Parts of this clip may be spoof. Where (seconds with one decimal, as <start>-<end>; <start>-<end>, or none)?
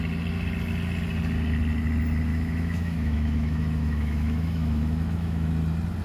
2.3-5.5